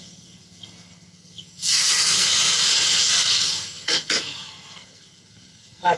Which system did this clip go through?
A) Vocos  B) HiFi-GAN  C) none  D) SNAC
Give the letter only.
D